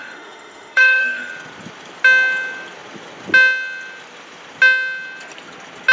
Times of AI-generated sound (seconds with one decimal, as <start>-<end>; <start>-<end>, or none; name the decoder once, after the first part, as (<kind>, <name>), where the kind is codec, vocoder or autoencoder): 0.0-1.3 (autoencoder, DAC-VAE)